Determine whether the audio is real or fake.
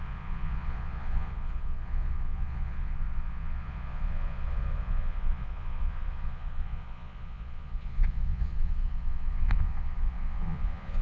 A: fake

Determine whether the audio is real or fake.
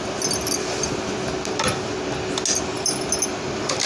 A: real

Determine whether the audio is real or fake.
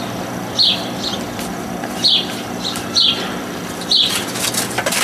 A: real